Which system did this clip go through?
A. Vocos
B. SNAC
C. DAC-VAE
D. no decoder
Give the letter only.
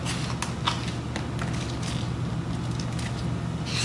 D